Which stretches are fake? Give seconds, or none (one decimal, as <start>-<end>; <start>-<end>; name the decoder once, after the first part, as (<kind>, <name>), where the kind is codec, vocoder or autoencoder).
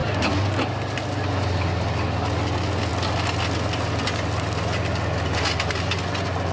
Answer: none